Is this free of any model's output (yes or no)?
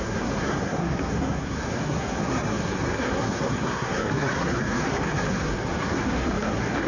no